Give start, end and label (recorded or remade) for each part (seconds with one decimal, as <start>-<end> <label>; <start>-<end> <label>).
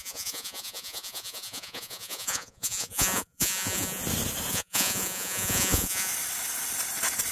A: 0.0-4.0 remade; 4.0-4.5 recorded; 4.5-6.1 remade; 6.1-7.3 recorded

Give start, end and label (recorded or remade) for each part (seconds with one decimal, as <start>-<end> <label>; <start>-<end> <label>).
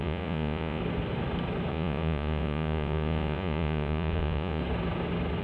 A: 0.0-0.8 remade; 0.8-1.7 recorded; 1.7-4.6 remade; 4.6-5.4 recorded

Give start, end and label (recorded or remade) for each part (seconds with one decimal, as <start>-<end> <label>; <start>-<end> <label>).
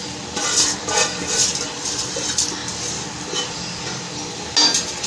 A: 0.0-5.1 recorded